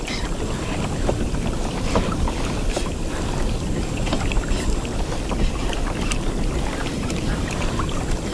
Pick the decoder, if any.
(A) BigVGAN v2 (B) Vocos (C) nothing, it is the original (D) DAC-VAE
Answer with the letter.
A